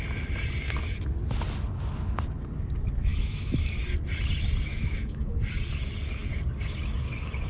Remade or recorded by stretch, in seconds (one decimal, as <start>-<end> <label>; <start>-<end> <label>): 0.0-3.1 recorded; 3.1-3.8 remade; 3.8-4.7 recorded; 4.7-5.3 remade; 5.3-7.5 recorded